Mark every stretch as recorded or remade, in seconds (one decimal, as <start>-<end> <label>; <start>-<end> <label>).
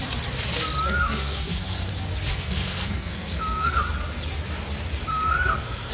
0.0-1.0 recorded; 1.0-1.9 remade; 1.9-2.3 recorded; 2.3-3.8 remade; 3.8-5.1 recorded; 5.1-5.9 remade